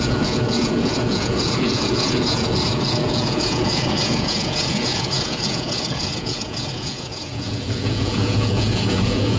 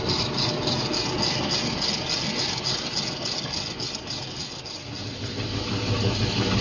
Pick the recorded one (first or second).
second